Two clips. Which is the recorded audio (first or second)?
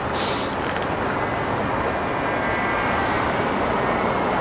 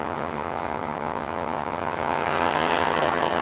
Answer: first